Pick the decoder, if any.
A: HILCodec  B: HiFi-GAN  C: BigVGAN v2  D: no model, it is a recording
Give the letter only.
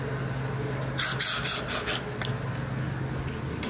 D